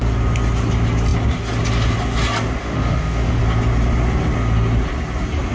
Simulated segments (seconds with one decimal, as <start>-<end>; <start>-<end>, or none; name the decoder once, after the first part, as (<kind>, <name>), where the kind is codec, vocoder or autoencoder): 2.6-3.4 (autoencoder, DAC-VAE)